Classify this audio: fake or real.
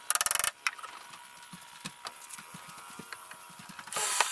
real